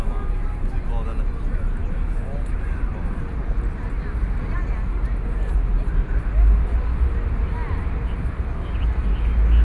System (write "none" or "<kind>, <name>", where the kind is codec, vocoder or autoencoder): none